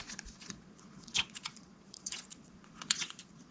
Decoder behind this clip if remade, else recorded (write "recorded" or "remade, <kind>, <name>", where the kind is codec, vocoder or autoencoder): remade, vocoder, Vocos